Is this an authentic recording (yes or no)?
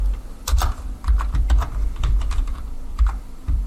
no